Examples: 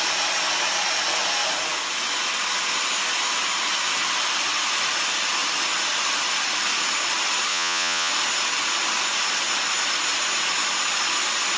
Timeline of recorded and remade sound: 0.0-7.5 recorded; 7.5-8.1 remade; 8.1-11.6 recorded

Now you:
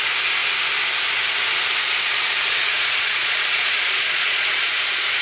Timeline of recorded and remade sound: 0.0-2.7 recorded; 2.7-4.8 remade; 4.8-5.2 recorded